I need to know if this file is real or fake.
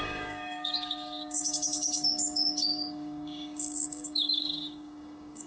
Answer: fake